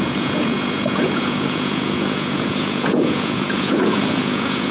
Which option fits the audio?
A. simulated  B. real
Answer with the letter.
A